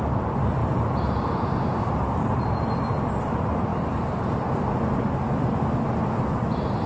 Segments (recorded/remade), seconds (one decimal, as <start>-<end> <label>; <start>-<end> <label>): 0.0-0.6 recorded; 0.6-1.9 remade; 1.9-6.9 recorded